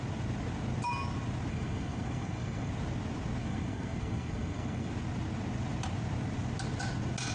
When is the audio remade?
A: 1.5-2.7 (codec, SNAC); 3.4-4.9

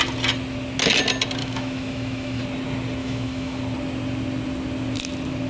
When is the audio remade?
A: 1.4-2.4 (autoencoder, DAC-VAE); 3.0-3.6

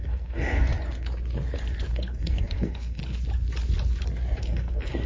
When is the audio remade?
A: 0.0-0.7 (codec, SNAC); 1.9-3.0; 4.4-5.1

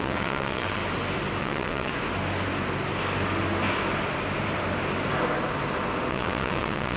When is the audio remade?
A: 0.0-0.8 (vocoder, WaveNeXt); 1.4-1.9; 6.1-7.0